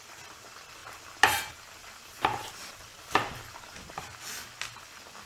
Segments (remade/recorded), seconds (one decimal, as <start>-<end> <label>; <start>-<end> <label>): 0.0-5.3 recorded